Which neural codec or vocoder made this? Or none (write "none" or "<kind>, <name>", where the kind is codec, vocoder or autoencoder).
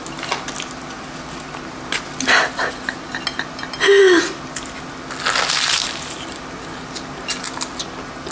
none